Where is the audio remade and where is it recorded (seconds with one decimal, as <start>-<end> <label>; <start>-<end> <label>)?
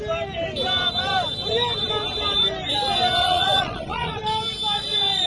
0.0-3.2 recorded; 3.2-4.2 remade; 4.2-5.3 recorded